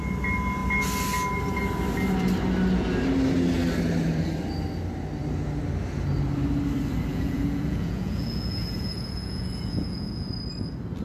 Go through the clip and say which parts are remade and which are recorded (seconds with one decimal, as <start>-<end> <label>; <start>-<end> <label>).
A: 0.0-7.1 recorded; 7.1-10.4 remade; 10.4-11.0 recorded